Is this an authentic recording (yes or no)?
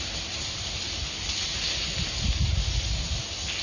yes